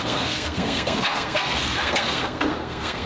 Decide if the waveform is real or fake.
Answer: fake